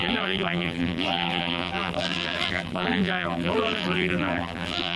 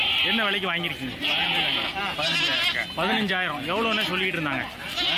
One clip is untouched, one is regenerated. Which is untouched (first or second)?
second